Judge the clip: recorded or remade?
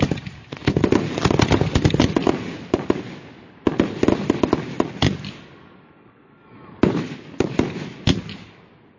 recorded